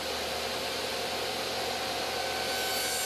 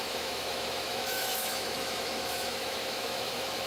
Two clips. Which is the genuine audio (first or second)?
first